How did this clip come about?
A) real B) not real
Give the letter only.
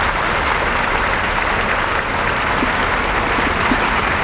A